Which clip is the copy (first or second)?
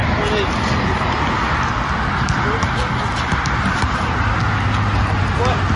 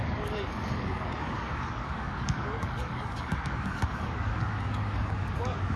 second